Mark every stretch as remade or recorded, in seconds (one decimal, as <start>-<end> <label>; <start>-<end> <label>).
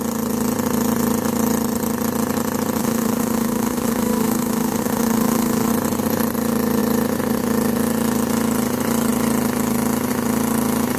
0.0-2.8 recorded; 2.8-5.7 remade; 5.7-11.0 recorded